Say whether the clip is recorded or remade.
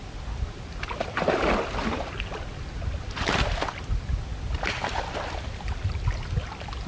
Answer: recorded